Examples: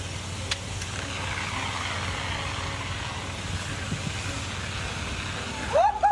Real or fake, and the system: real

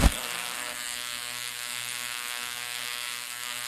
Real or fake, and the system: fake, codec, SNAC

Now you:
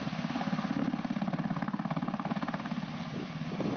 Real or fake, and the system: real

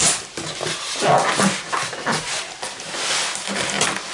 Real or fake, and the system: real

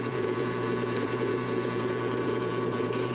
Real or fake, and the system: fake, vocoder, Vocos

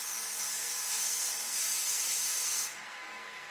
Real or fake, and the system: fake, codec, SNAC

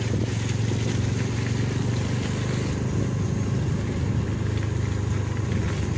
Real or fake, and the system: real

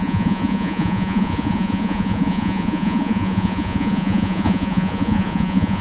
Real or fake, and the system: fake, vocoder, Vocos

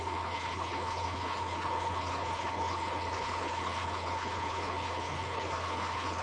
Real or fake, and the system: fake, codec, HILCodec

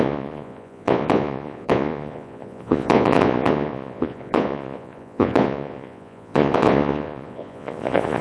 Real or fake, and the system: fake, vocoder, Vocos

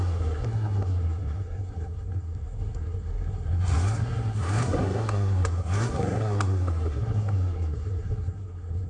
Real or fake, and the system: fake, codec, SNAC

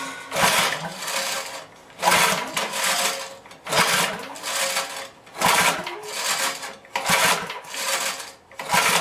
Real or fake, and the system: real